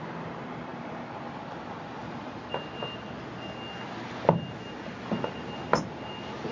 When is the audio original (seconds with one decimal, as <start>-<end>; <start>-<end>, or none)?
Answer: 0.0-6.5

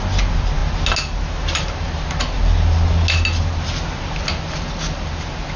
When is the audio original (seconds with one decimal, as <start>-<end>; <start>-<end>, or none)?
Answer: 0.0-5.6

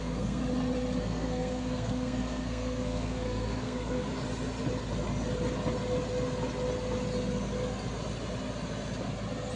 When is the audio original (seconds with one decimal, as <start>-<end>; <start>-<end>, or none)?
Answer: 0.4-1.0; 4.1-9.6

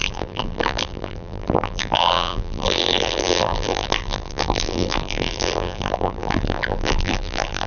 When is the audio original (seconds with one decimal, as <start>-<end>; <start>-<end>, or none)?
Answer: none

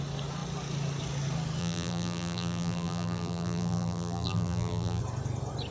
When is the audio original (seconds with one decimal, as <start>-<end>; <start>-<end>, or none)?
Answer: 0.0-1.6; 5.0-5.7

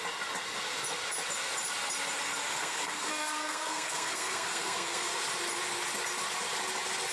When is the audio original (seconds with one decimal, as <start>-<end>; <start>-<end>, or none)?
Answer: 0.0-2.6; 5.1-7.1

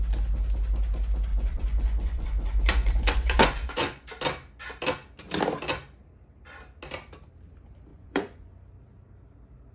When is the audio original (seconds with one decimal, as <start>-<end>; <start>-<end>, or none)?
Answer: 0.0-1.3; 4.1-7.9; 8.5-9.7

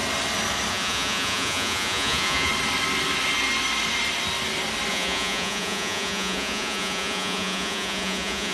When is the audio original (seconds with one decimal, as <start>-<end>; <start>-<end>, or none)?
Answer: 0.0-0.7; 2.5-4.9